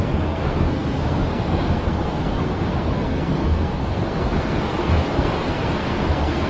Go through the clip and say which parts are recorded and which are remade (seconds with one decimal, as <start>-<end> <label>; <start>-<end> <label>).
0.0-6.5 remade